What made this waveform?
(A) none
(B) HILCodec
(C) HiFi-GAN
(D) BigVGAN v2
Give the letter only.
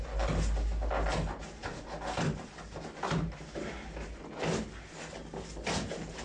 A